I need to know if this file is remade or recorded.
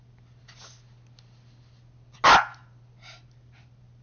recorded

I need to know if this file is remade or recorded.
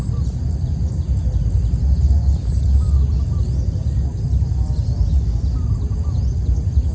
recorded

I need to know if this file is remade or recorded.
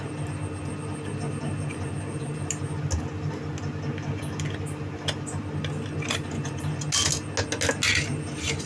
recorded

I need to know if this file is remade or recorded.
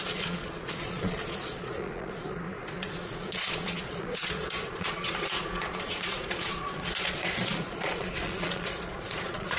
remade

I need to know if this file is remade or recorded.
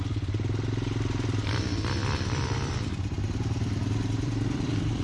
remade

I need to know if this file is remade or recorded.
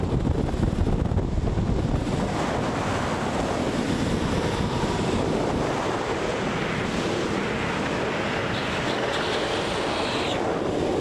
recorded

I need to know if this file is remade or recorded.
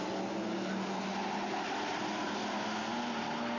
recorded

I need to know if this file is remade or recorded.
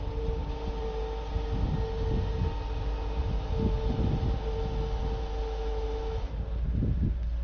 recorded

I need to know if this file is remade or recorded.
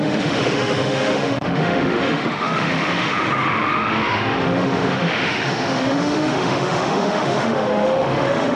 remade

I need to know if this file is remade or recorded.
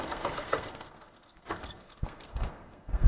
remade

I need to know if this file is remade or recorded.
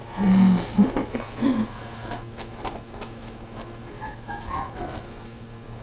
remade